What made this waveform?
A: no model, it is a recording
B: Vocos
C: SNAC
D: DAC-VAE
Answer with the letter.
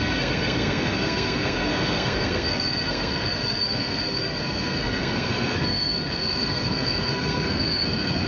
C